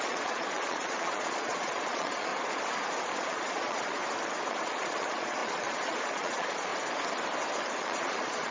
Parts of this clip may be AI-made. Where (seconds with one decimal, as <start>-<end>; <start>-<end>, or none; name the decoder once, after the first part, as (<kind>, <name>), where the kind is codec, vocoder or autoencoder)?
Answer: 0.0-2.3 (vocoder, Vocos); 3.0-4.0; 4.5-6.7; 7.8-8.5